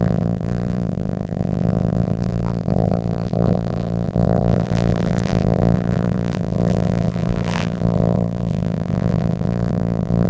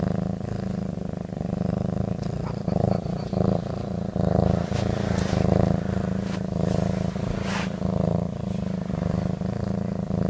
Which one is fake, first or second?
first